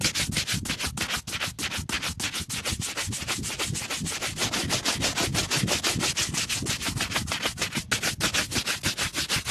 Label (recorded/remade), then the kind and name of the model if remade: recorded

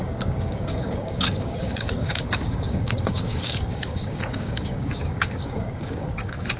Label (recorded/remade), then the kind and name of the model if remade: remade, codec, DAC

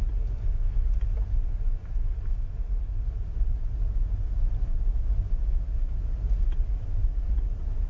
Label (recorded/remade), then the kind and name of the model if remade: recorded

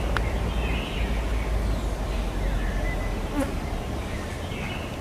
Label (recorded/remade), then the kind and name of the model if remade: recorded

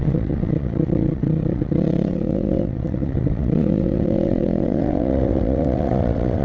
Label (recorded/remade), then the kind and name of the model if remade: remade, vocoder, WaveNeXt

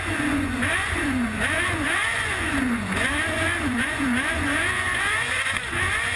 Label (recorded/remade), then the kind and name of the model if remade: remade, vocoder, Vocos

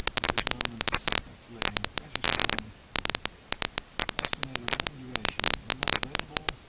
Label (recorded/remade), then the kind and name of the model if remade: recorded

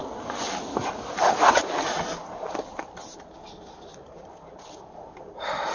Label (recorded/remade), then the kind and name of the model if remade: recorded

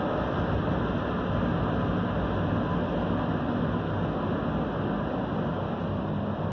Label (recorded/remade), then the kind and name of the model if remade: recorded